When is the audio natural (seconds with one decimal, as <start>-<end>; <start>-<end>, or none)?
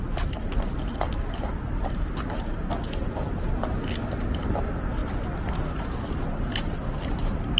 0.0-7.6